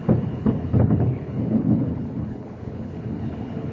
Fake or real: fake